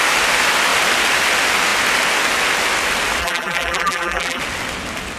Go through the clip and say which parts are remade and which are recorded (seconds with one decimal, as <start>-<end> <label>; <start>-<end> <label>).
0.0-3.2 recorded; 3.2-4.4 remade; 4.4-5.2 recorded